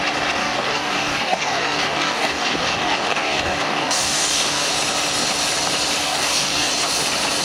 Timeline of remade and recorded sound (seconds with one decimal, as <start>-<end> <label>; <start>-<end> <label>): 0.0-0.4 recorded; 0.4-4.7 remade; 4.7-6.0 recorded; 6.0-6.7 remade; 6.7-7.4 recorded